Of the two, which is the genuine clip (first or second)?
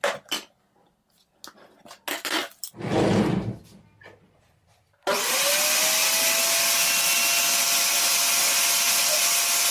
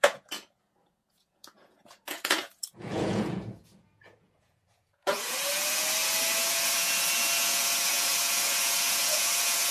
first